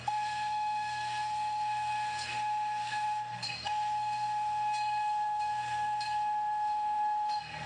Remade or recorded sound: remade